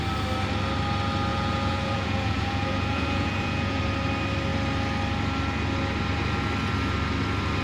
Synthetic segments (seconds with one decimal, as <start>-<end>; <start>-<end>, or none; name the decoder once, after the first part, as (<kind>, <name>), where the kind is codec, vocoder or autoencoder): 1.3-3.8 (vocoder, Vocos)